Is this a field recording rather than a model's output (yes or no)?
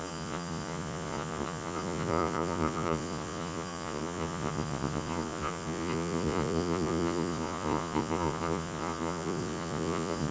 no